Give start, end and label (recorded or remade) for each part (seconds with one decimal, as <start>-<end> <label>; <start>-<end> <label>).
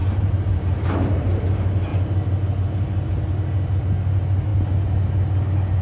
0.0-0.9 remade; 0.9-5.8 recorded